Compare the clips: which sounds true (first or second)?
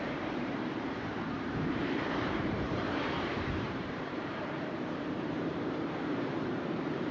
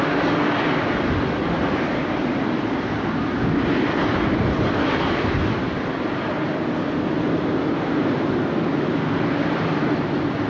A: second